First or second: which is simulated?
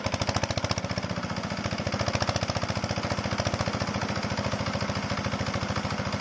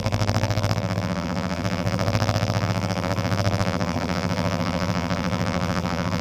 second